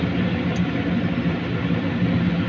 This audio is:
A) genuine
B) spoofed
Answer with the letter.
A